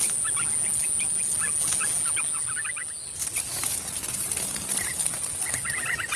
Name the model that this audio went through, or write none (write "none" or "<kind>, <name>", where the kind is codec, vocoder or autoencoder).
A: none